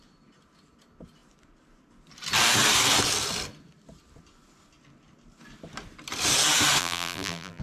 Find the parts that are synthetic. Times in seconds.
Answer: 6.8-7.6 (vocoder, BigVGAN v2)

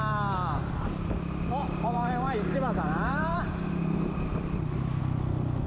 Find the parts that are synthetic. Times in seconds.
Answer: 1.6-5.0 (vocoder, BigVGAN v2)

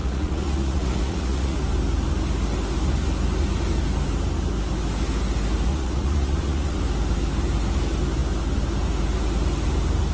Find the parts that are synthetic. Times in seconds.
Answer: 0.0-1.6 (vocoder, Vocos); 5.7-6.8

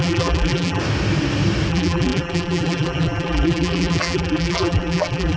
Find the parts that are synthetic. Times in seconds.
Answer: 0.0-0.8 (vocoder, BigVGAN v2); 1.7-5.4

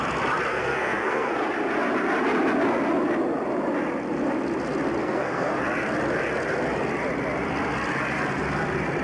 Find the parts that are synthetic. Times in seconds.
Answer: 0.5-1.3 (codec, SNAC); 5.0-5.6